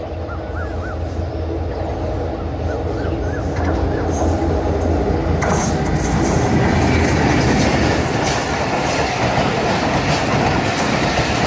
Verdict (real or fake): real